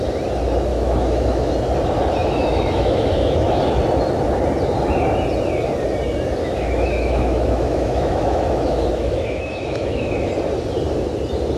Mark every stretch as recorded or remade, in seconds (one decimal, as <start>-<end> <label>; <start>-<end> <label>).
0.0-0.7 recorded; 0.7-1.5 remade; 1.5-2.2 recorded; 2.2-3.6 remade; 3.6-6.4 recorded; 6.4-10.3 remade; 10.3-11.6 recorded